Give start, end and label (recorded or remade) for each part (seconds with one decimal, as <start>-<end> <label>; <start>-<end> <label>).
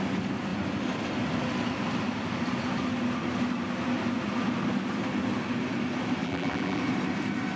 0.0-6.2 recorded; 6.2-6.8 remade; 6.8-7.6 recorded